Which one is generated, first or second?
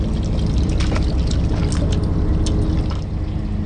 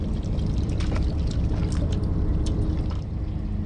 second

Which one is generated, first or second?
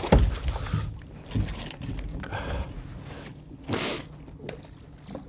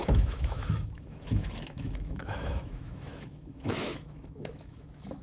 second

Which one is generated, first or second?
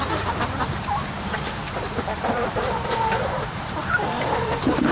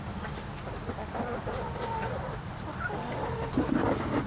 first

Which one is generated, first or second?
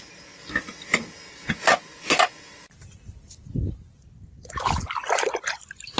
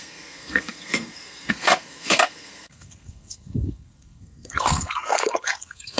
second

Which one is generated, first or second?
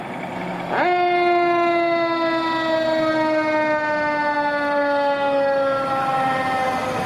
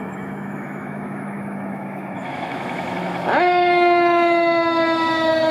second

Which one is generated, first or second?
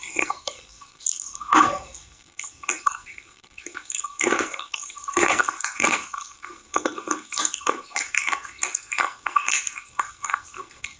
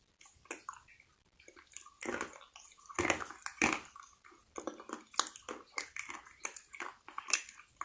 first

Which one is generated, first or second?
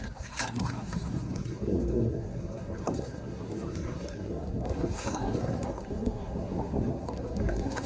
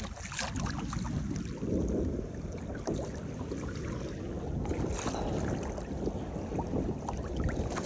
first